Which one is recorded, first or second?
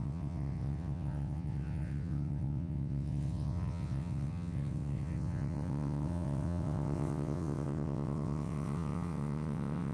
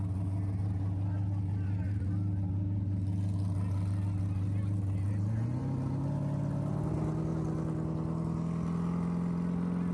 second